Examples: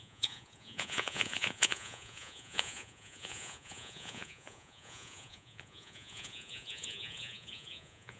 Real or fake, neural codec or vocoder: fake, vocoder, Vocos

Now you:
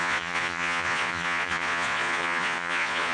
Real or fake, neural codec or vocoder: fake, vocoder, Vocos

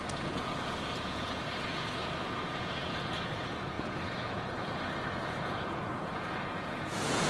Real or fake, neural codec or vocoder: fake, vocoder, Vocos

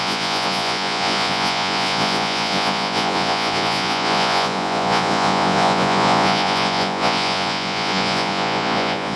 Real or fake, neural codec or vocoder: fake, vocoder, Vocos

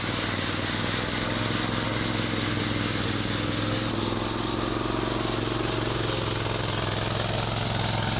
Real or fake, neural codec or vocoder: real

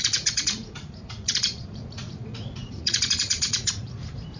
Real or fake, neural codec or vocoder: fake, vocoder, Vocos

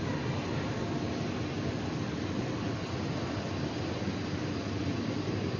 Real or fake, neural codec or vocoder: real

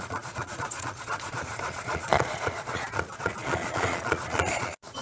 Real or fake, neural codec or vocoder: fake, vocoder, Vocos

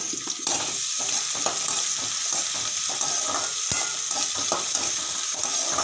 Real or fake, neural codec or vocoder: real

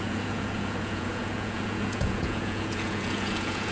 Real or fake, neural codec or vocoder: fake, vocoder, Vocos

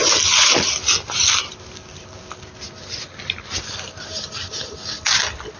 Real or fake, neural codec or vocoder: real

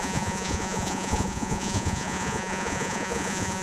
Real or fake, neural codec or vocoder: fake, vocoder, Vocos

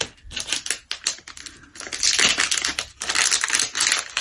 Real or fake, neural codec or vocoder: real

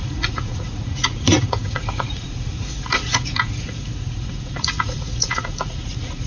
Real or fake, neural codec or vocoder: fake, vocoder, Vocos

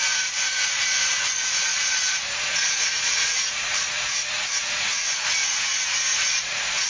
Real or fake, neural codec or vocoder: fake, vocoder, Vocos